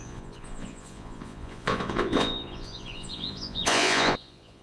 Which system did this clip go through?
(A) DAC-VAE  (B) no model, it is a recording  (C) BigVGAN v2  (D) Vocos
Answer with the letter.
D